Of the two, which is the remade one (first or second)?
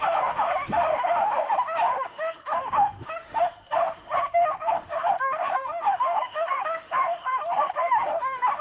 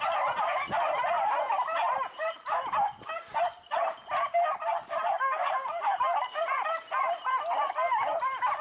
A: first